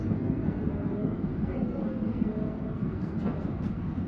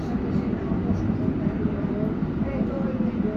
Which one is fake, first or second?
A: first